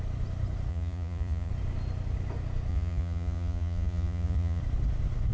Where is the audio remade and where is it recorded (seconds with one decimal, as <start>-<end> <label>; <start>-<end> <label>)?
0.0-0.7 recorded; 0.7-1.5 remade; 1.5-2.7 recorded; 2.7-4.6 remade; 4.6-5.3 recorded